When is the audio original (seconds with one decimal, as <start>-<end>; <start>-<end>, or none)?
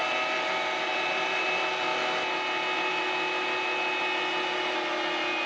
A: 1.9-5.5